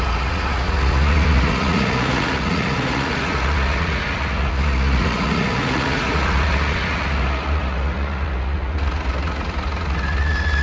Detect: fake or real fake